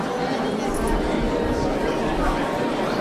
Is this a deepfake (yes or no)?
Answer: no